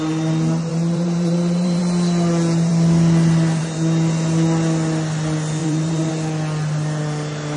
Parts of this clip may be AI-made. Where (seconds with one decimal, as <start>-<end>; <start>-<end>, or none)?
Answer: 0.7-1.8; 5.6-6.1